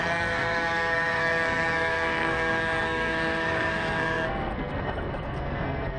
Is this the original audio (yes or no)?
no